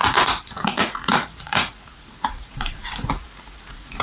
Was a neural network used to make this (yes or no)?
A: yes